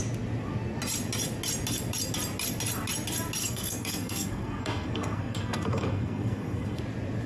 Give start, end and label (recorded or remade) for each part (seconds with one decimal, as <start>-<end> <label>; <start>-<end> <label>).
0.0-3.4 recorded; 3.4-6.8 remade; 6.8-7.3 recorded